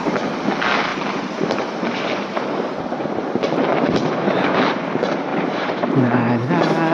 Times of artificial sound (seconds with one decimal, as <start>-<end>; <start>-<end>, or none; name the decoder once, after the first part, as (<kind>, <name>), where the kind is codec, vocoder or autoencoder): 0.9-2.4 (vocoder, BigVGAN v2); 5.3-6.3